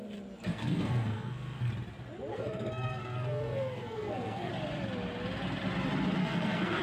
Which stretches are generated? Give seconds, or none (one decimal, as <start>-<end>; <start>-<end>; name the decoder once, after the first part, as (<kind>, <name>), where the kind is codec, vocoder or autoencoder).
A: 0.5-1.7 (codec, SNAC); 2.3-4.5; 6.2-6.8